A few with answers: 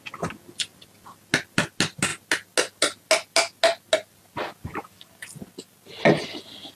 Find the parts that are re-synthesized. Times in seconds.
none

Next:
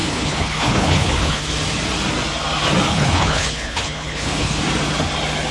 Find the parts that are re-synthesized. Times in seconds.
0.0-1.4 (codec, HILCodec); 2.9-4.6

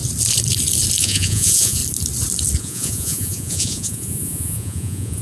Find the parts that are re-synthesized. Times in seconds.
1.0-1.8 (vocoder, Vocos); 2.6-5.2

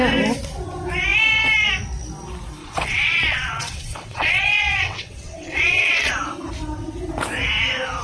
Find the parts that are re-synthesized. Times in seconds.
2.6-6.1 (vocoder, WaveNeXt)